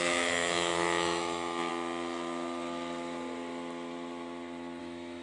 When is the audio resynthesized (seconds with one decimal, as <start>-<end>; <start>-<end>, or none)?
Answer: 0.0-1.7; 4.8-5.2